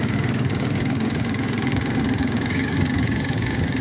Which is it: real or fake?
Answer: fake